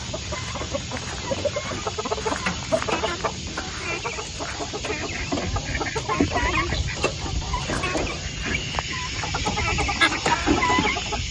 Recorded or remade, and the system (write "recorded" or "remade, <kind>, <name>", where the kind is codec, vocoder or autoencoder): recorded